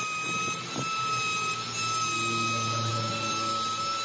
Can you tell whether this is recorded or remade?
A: recorded